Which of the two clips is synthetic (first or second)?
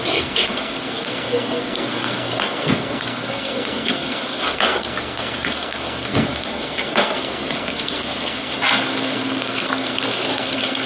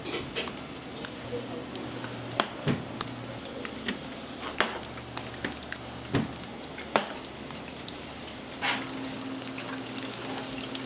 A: first